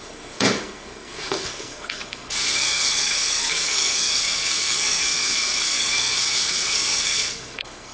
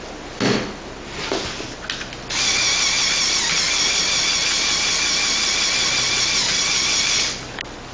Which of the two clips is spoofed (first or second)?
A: first